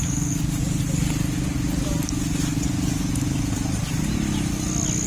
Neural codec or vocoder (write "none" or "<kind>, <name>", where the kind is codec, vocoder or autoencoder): none